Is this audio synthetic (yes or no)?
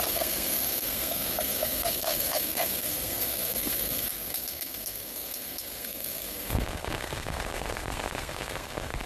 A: yes